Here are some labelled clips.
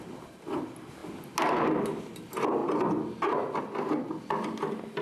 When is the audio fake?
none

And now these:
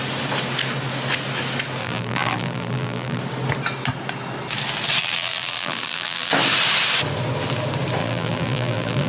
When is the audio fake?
1.8-3.2 (vocoder, BigVGAN v2); 5.0-6.3; 8.0-9.1

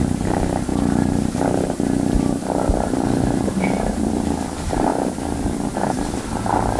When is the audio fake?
0.0-4.9 (vocoder, BigVGAN v2); 6.1-6.8

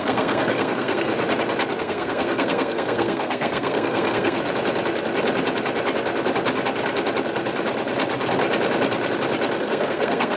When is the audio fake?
0.0-1.1 (codec, SNAC); 1.8-4.4; 9.6-10.4

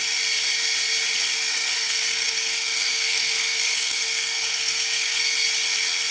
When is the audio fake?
1.5-5.2 (codec, SNAC)